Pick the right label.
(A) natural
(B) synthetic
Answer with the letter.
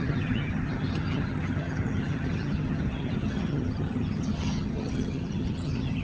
B